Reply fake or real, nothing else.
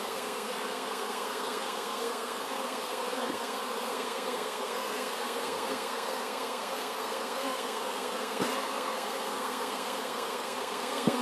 fake